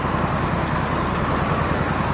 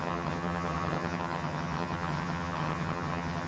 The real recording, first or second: first